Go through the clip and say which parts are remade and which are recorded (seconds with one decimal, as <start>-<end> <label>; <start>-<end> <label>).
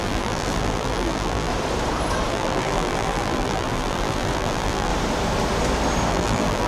0.0-1.5 remade; 1.5-2.3 recorded; 2.3-4.9 remade; 4.9-6.1 recorded; 6.1-6.7 remade